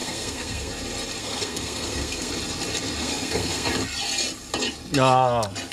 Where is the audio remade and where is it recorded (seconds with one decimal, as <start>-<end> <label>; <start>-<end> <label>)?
0.0-0.7 remade; 0.7-1.2 recorded; 1.2-2.3 remade; 2.3-3.0 recorded; 3.0-3.7 remade; 3.7-5.7 recorded